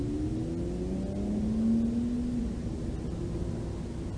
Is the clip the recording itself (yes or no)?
yes